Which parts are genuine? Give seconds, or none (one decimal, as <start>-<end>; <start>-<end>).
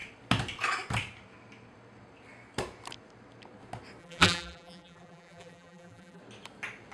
0.0-4.0; 6.2-6.9